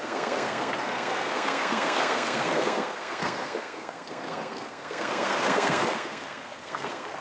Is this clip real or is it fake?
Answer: fake